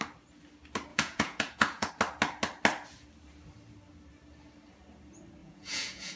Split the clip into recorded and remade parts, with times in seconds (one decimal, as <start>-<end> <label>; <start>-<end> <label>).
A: 0.0-0.9 recorded; 0.9-1.9 remade; 1.9-5.4 recorded; 5.4-6.2 remade